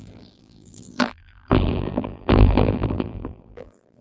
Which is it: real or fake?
fake